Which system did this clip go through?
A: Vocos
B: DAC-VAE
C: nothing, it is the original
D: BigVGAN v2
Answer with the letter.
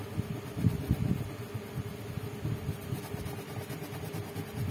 C